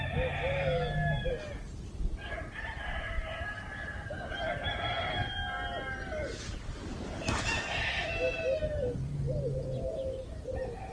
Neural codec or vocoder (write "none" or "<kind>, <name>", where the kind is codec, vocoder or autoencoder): none